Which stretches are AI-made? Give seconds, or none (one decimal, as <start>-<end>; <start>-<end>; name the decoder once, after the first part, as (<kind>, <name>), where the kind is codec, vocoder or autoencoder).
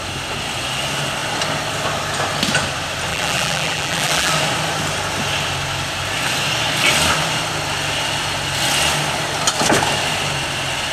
3.1-4.3 (vocoder, BigVGAN v2)